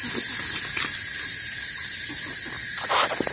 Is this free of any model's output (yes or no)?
yes